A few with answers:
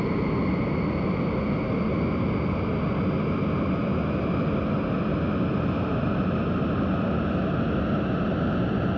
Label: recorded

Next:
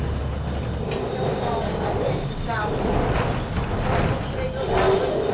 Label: recorded